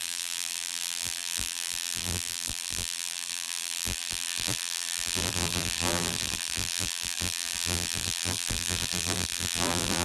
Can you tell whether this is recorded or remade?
remade